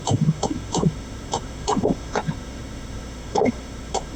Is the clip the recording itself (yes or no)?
no